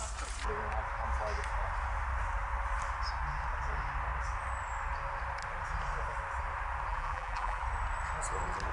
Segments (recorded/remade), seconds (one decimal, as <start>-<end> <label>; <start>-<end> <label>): 0.0-6.9 recorded; 6.9-7.6 remade; 7.6-8.7 recorded